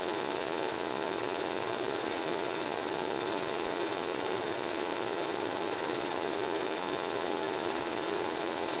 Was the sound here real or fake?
fake